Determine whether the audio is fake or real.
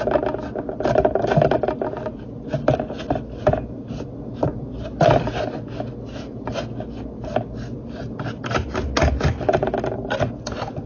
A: real